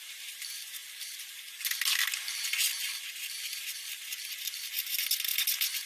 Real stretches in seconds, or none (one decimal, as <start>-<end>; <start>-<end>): 0.0-5.9